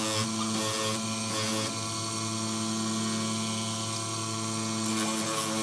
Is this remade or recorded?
recorded